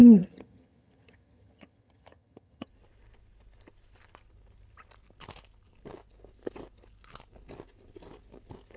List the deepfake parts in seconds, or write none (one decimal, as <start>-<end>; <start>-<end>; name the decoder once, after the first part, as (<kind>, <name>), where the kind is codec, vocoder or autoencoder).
0.0-2.7 (vocoder, HiFi-GAN)